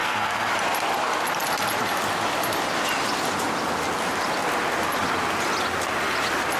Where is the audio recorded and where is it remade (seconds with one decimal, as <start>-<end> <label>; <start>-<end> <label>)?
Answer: 0.0-0.5 remade; 0.5-6.6 recorded